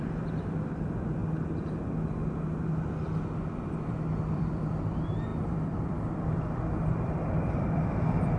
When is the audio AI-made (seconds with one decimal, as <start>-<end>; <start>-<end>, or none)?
0.0-1.2; 3.7-8.4